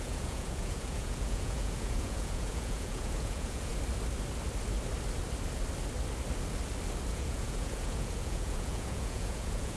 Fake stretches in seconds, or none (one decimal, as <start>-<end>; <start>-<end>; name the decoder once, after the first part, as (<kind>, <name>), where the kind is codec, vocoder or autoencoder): 0.0-3.7 (vocoder, Vocos); 7.1-9.8